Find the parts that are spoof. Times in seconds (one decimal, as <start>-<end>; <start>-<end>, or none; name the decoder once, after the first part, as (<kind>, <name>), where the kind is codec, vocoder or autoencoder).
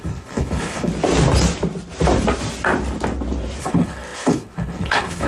0.0-0.9 (codec, HILCodec); 3.6-5.3